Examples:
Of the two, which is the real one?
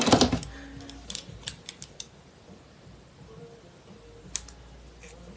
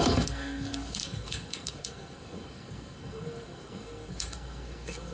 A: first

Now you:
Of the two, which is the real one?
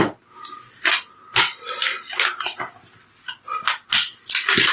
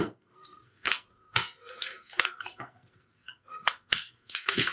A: first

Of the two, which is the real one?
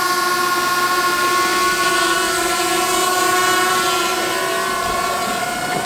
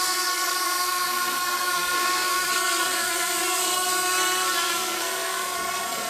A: first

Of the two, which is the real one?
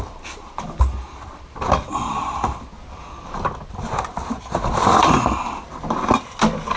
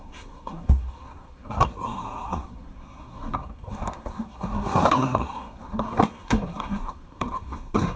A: first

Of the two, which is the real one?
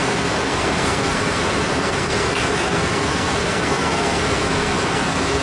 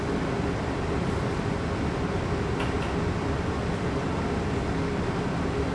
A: second